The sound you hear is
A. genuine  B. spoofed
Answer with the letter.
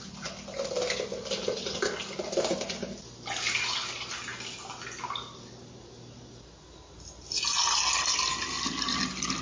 A